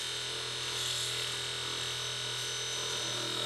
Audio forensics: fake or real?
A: real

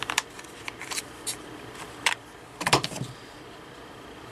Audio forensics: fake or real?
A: fake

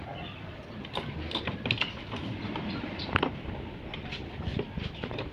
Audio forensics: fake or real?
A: fake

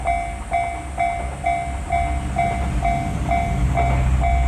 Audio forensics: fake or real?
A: real